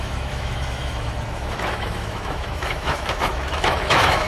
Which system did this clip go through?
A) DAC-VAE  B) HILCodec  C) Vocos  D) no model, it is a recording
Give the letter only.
A